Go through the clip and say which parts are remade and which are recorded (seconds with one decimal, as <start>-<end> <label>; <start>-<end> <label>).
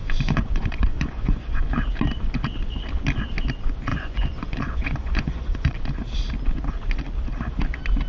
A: 0.0-1.6 remade; 1.6-3.9 recorded; 3.9-5.8 remade; 5.8-8.1 recorded